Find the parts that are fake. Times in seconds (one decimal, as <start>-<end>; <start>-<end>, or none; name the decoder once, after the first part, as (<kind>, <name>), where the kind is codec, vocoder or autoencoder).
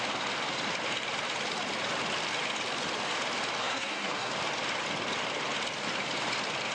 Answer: 3.6-4.3 (codec, SNAC)